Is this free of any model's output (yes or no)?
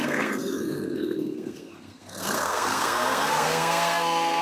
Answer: no